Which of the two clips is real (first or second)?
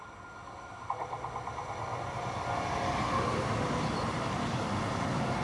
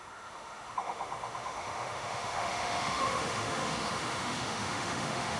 first